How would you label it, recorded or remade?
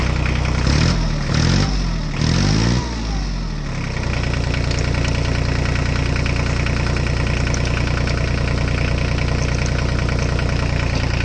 recorded